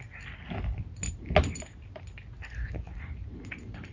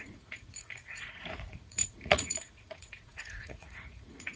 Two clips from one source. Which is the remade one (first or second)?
second